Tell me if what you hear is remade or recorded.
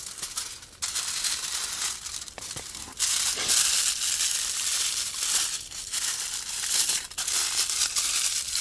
recorded